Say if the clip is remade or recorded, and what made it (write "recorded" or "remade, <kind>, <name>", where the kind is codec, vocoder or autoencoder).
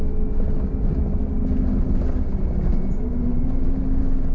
recorded